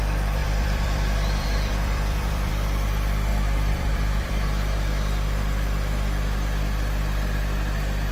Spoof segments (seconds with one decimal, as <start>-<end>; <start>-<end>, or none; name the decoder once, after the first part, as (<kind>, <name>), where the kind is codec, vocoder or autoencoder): 0.4-2.5 (vocoder, BigVGAN v2); 3.3-4.3